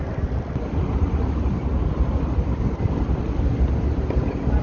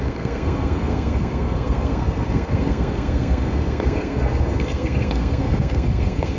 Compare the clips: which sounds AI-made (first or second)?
second